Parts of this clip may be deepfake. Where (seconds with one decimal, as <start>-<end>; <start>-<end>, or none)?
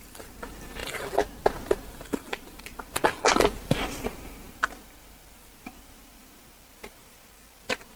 0.0-0.8; 5.6-8.0